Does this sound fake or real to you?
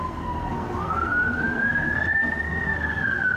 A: fake